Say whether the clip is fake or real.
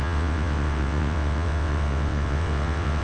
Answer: fake